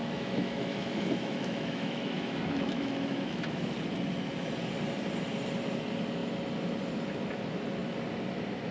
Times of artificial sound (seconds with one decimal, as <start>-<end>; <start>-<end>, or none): 0.0-3.7